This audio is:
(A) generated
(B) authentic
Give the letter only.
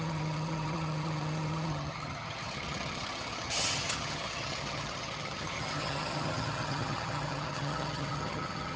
A